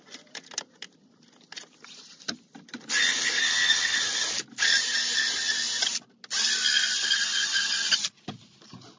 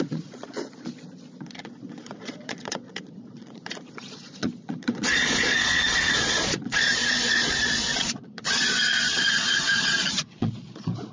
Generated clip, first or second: second